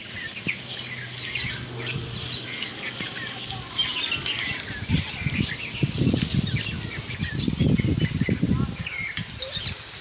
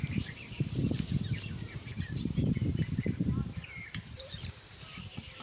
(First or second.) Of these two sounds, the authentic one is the first